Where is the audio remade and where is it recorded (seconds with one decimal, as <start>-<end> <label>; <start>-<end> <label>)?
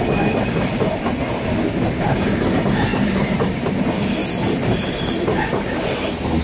0.0-2.9 recorded; 2.9-3.7 remade; 3.7-4.2 recorded; 4.2-5.6 remade; 5.6-6.4 recorded